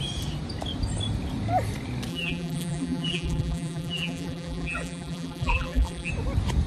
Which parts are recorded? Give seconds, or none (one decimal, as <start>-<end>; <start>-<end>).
0.0-2.1; 6.1-6.7